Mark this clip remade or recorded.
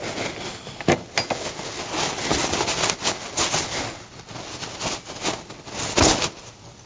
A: recorded